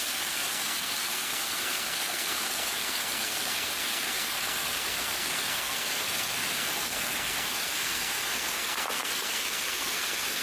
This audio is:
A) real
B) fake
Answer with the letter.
B